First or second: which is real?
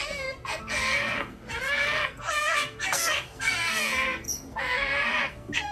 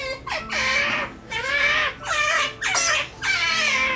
second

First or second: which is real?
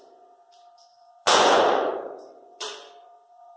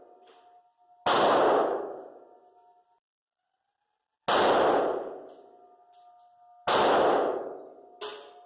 second